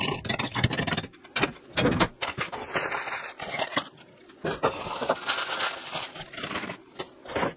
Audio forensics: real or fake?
real